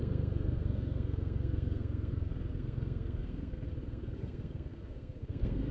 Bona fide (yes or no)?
no